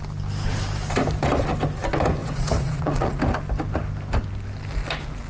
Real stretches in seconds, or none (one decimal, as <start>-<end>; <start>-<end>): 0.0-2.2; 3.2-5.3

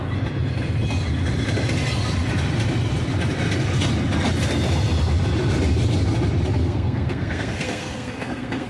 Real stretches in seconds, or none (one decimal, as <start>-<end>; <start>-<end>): 0.0-6.6

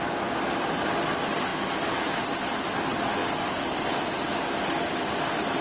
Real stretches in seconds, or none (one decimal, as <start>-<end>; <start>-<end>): 0.0-5.6